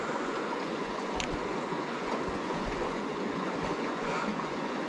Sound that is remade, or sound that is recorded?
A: remade